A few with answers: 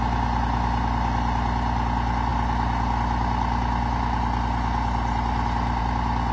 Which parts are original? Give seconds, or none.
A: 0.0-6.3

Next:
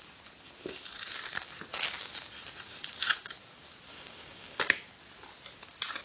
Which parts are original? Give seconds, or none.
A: 0.0-3.9; 4.6-6.0

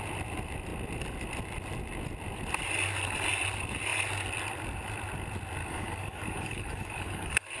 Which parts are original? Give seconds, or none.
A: 0.0-5.6